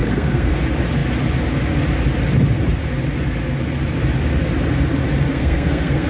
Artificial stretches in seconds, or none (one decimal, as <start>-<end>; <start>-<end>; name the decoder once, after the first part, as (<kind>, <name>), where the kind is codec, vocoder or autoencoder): 0.0-0.5 (codec, SNAC); 5.3-6.1